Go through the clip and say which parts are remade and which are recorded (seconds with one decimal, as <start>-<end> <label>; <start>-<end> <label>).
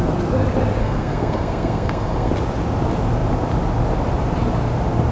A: 0.0-0.8 recorded; 0.8-2.3 remade; 2.3-5.1 recorded